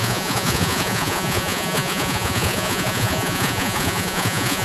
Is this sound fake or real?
fake